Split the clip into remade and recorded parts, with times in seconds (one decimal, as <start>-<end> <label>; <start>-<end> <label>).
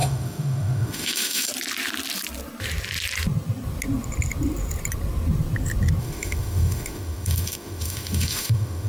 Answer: 0.0-1.5 remade; 1.5-6.0 recorded; 6.0-8.9 remade